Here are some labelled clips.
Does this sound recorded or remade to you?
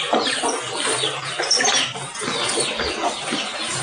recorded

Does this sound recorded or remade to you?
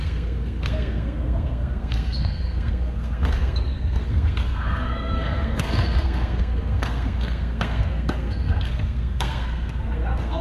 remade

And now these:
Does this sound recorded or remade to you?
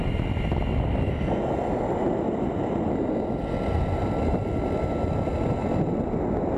recorded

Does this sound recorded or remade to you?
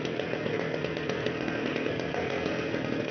remade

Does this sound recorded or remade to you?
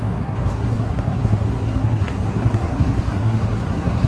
remade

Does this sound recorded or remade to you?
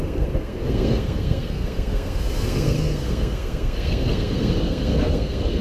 remade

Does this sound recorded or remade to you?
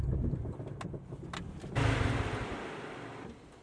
recorded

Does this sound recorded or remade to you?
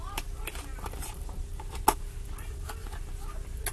recorded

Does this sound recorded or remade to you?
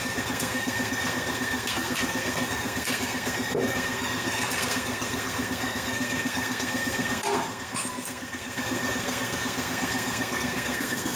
remade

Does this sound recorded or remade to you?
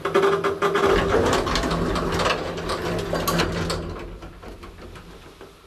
recorded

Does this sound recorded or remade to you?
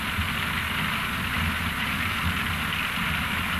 recorded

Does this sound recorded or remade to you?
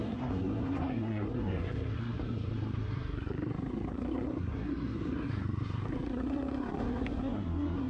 remade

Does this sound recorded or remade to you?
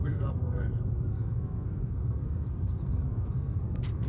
remade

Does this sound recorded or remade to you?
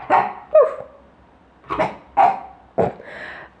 recorded